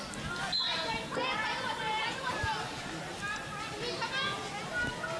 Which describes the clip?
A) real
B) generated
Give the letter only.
A